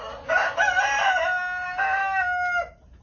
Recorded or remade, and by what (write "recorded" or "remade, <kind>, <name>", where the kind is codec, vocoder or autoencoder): recorded